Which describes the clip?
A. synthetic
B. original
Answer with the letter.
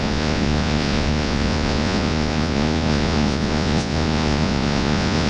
A